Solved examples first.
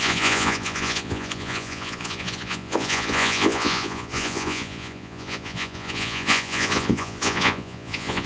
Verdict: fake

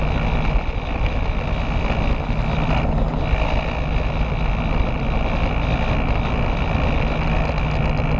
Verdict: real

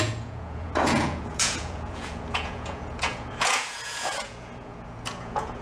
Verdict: fake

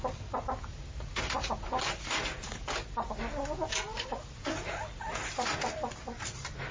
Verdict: real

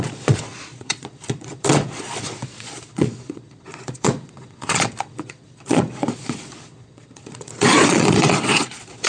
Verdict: fake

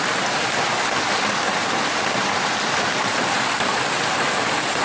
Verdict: real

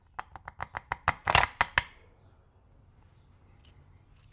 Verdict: real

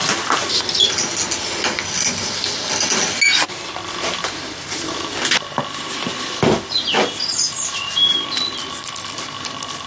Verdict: real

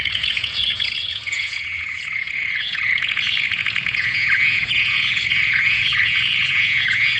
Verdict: fake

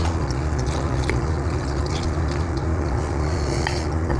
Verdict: fake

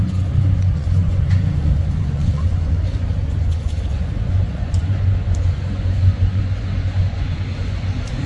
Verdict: fake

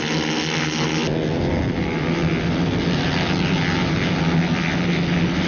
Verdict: real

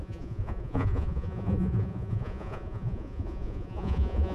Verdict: fake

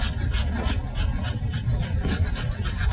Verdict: real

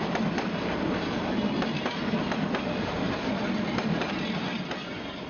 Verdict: real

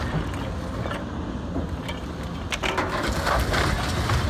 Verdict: real